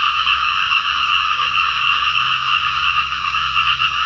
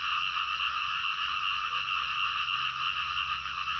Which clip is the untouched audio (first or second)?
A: second